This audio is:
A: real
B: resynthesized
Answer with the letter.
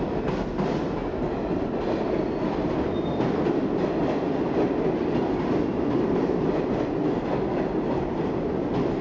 A